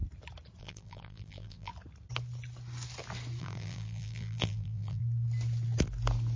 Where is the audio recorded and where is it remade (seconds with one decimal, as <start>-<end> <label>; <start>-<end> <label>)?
0.0-0.6 recorded; 0.6-1.7 remade; 1.7-3.4 recorded; 3.4-5.0 remade; 5.0-6.4 recorded